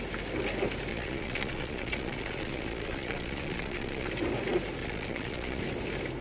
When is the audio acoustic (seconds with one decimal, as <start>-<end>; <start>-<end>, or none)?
0.0-0.9; 4.1-4.8; 5.6-6.2